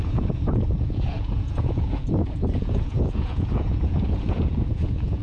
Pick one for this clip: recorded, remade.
remade